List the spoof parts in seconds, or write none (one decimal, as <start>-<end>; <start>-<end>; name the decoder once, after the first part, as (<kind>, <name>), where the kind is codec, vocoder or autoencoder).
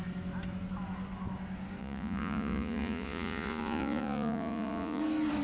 1.8-5.0 (vocoder, Vocos)